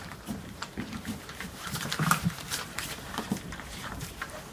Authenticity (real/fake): fake